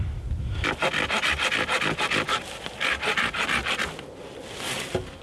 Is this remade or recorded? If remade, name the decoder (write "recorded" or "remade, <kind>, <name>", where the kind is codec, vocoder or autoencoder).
recorded